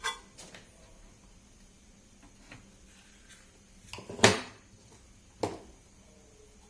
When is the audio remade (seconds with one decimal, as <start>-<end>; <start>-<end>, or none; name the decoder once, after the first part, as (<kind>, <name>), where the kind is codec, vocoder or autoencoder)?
4.3-4.9 (vocoder, BigVGAN v2)